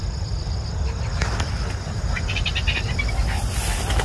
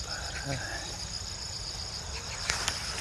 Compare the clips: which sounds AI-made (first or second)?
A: second